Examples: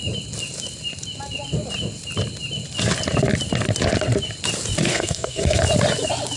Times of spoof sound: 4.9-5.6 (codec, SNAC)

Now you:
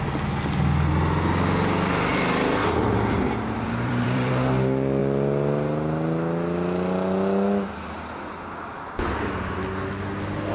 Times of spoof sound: 2.1-4.3 (vocoder, BigVGAN v2)